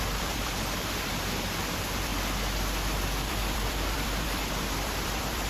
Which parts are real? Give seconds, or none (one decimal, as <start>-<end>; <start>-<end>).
2.1-3.3